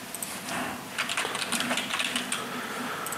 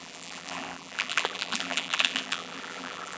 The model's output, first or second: second